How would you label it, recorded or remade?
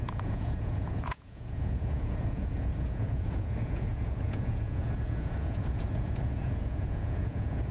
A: remade